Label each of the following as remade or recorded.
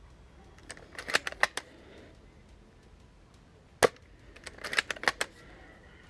recorded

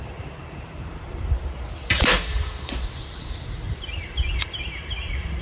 remade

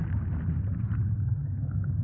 recorded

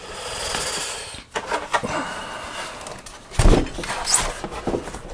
recorded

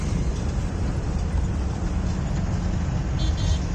recorded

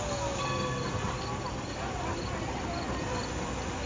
recorded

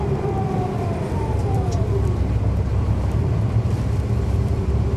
remade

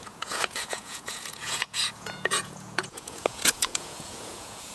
remade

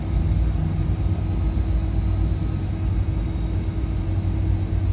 recorded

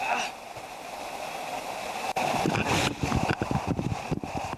recorded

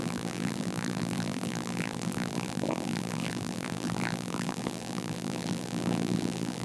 remade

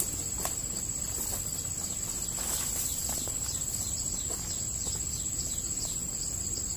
recorded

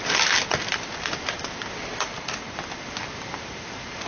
recorded